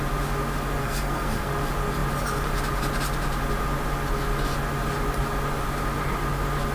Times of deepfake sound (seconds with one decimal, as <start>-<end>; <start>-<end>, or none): 0.8-1.5